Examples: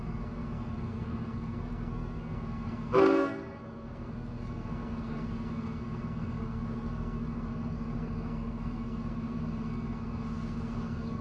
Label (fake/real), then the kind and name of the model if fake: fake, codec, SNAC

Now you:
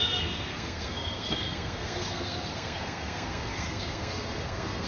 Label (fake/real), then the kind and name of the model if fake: fake, codec, SNAC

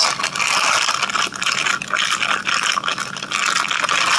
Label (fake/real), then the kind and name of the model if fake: real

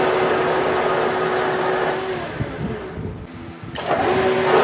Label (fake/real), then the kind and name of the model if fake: real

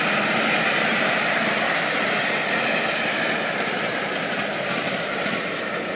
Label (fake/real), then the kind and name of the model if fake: real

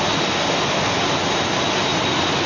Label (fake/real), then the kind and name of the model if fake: real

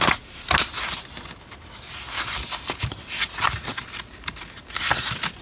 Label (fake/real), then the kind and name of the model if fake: real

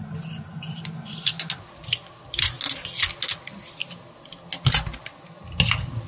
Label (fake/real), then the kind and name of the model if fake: real